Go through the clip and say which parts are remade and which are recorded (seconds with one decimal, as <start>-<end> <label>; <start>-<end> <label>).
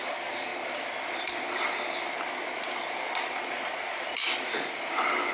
0.0-5.3 recorded